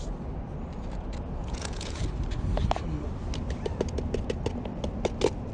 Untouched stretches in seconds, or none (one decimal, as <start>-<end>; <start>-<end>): 0.0-1.4; 2.0-5.5